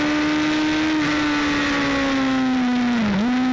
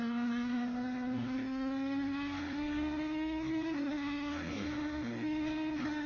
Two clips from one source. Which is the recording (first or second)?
first